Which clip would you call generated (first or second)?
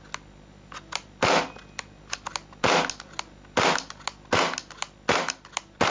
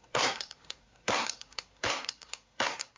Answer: second